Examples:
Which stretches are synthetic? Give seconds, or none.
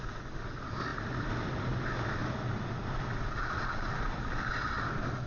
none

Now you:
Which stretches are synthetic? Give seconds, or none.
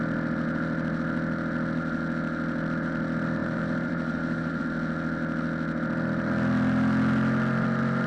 3.4-4.6 (vocoder, BigVGAN v2)